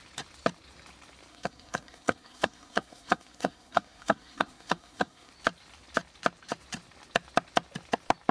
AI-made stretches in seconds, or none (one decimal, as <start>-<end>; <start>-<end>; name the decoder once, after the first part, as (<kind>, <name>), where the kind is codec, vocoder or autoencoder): 1.3-5.3 (codec, SNAC)